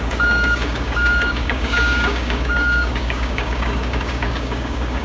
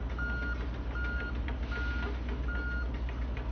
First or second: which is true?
second